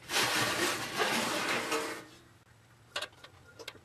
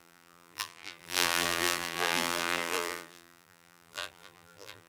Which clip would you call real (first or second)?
first